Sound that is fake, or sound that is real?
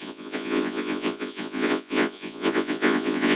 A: fake